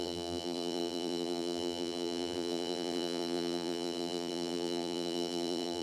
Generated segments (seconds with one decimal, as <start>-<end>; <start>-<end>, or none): 0.0-5.8